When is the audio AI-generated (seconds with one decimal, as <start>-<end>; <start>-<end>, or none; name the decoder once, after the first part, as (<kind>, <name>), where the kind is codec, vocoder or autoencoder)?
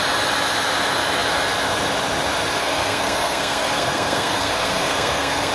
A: 2.6-5.5 (codec, SNAC)